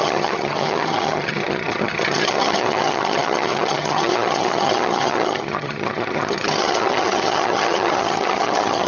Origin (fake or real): fake